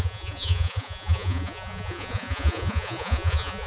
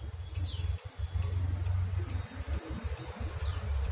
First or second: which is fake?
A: first